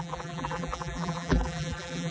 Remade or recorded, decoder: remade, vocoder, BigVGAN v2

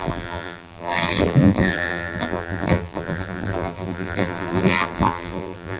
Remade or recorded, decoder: remade, vocoder, BigVGAN v2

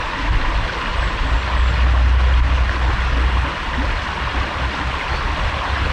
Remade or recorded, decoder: recorded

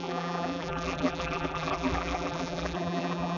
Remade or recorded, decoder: remade, vocoder, BigVGAN v2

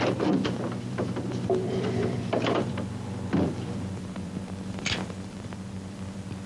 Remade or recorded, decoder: remade, vocoder, BigVGAN v2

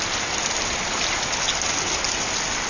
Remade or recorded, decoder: recorded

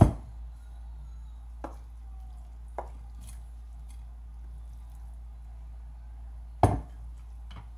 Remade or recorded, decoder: recorded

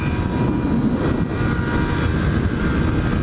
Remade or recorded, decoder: recorded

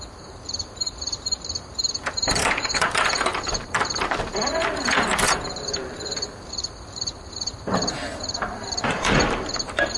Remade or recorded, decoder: remade, vocoder, BigVGAN v2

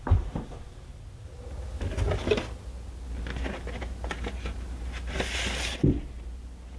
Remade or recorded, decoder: recorded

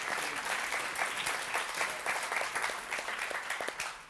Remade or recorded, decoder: recorded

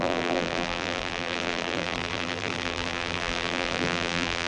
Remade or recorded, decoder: remade, vocoder, BigVGAN v2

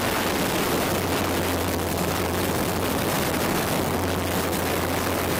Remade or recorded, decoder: recorded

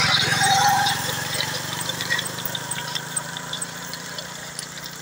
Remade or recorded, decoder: remade, vocoder, BigVGAN v2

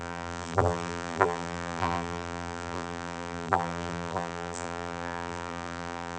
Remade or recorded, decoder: remade, vocoder, BigVGAN v2